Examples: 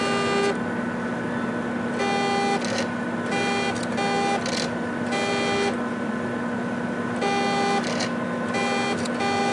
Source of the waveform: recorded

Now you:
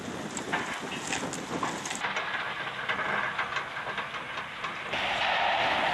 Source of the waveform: recorded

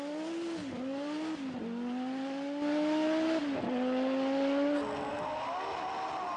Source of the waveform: recorded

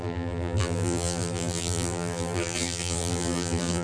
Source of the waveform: remade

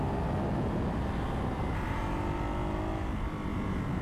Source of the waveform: recorded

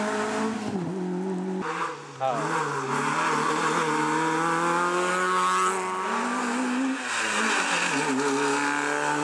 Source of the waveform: recorded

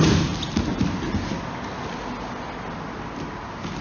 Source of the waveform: recorded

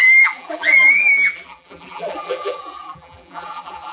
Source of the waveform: remade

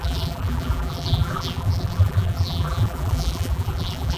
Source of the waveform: remade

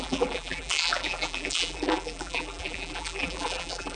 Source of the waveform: remade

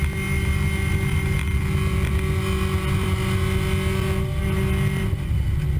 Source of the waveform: recorded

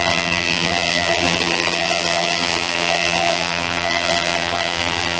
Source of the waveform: remade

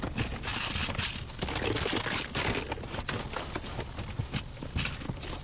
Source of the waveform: recorded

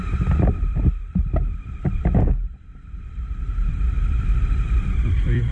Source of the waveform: remade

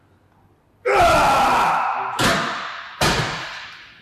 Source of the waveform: recorded